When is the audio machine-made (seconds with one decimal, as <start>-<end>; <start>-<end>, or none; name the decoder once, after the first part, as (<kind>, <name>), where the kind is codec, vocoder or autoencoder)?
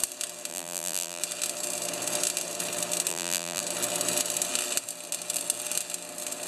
0.5-1.2 (vocoder, BigVGAN v2); 3.1-3.6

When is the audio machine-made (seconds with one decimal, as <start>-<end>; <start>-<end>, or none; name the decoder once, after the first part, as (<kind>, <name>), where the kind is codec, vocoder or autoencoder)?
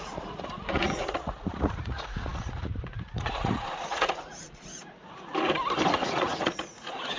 0.0-5.3 (vocoder, Vocos); 5.9-7.2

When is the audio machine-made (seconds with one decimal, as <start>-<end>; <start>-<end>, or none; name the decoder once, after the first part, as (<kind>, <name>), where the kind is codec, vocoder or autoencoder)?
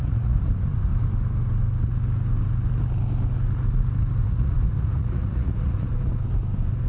0.0-0.9 (vocoder, Vocos); 4.2-5.9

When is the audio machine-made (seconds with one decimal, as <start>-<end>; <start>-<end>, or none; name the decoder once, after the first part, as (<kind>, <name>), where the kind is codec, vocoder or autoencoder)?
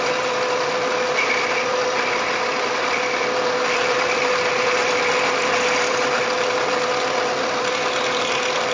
none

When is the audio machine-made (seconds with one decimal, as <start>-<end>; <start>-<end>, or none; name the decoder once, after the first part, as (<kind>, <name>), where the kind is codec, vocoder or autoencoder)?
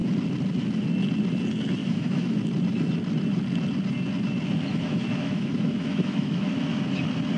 1.8-2.4 (autoencoder, DAC-VAE); 4.7-6.5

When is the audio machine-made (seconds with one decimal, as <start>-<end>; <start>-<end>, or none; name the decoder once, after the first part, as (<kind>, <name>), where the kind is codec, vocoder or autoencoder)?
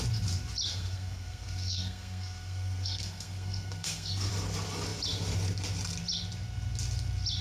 0.7-4.3 (codec, SNAC)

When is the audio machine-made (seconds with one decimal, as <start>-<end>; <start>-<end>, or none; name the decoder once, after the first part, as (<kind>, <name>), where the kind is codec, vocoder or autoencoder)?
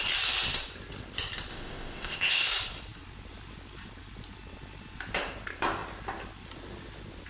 1.5-2.5 (codec, ZipCodec)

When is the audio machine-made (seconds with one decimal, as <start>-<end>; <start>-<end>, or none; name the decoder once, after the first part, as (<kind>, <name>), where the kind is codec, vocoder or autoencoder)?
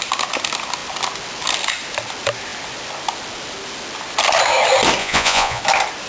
5.0-5.6 (vocoder, Vocos)